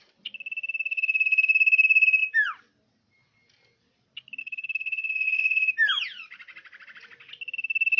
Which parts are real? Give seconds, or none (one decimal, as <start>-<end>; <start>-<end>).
0.0-4.4; 5.7-8.0